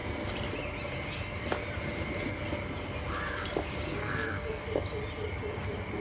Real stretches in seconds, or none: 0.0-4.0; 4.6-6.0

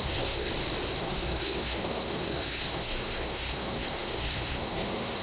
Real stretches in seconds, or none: 0.5-1.0

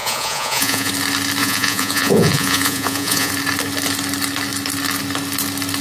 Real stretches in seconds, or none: 0.9-1.4; 3.3-5.8

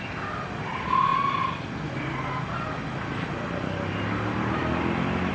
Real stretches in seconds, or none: 0.0-5.3

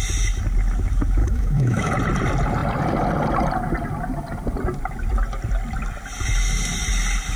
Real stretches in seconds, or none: 0.0-1.2; 1.9-7.4

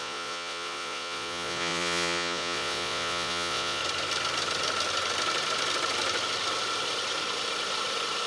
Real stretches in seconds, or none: 3.8-8.3

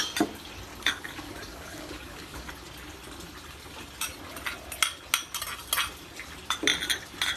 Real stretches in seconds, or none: 0.0-0.7; 2.5-7.4